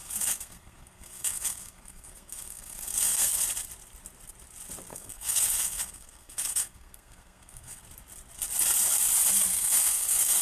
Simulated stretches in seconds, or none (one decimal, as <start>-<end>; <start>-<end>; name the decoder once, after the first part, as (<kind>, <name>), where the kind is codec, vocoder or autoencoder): 0.0-3.4 (codec, SNAC); 4.9-7.8; 9.5-10.4